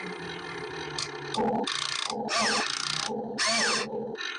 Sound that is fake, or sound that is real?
real